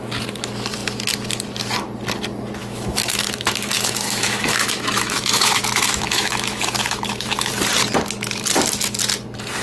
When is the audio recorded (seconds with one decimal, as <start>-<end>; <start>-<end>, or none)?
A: 0.0-2.6; 7.5-9.6